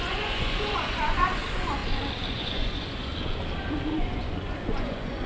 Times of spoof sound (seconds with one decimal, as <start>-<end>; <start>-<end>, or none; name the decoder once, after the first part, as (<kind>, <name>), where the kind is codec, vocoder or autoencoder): 0.0-1.8 (vocoder, Vocos); 2.3-3.1; 3.9-5.3

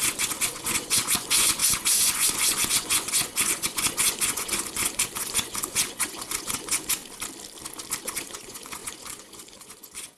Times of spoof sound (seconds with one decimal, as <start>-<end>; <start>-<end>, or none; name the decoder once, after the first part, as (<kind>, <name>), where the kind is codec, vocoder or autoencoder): 0.0-7.0 (vocoder, Vocos); 8.0-10.2

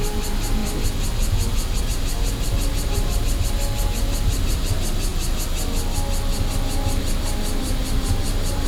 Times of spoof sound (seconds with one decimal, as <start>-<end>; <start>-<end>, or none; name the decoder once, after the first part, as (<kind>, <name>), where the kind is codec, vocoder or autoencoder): 0.0-0.6 (vocoder, BigVGAN v2); 1.8-5.1; 7.0-8.7

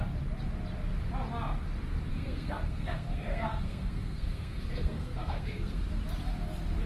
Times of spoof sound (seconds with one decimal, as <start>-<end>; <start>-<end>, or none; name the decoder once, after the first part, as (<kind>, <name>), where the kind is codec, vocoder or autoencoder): 2.1-5.8 (codec, SNAC)